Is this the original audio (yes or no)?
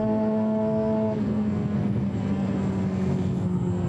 no